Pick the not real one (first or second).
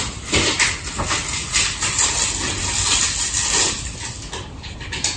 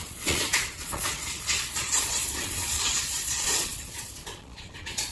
second